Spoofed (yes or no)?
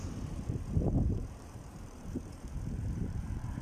yes